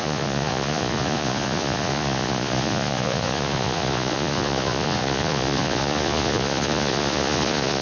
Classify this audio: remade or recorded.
remade